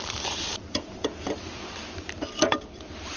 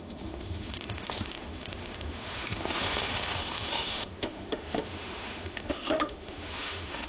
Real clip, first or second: first